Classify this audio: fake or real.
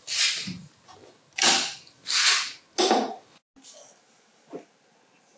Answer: real